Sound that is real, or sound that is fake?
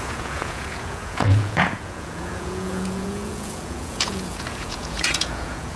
fake